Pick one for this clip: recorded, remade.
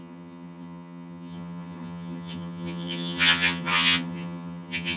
remade